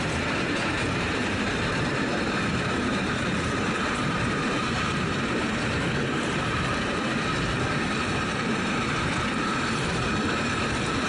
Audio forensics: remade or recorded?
remade